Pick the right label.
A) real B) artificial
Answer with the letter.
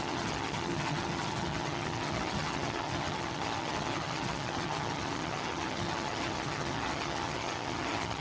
B